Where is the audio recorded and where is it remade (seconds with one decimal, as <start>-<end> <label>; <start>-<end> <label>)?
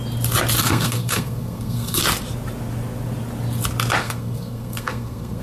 0.0-0.6 recorded; 0.6-2.0 remade; 2.0-4.0 recorded; 4.0-5.4 remade